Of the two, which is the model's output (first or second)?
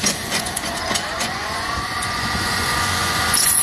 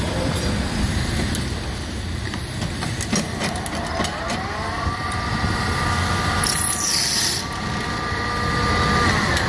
first